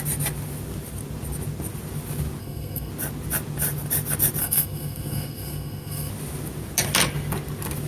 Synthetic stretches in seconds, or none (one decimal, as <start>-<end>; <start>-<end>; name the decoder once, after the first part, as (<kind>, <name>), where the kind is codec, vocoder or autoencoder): 2.4-2.9 (codec, SNAC); 4.4-6.1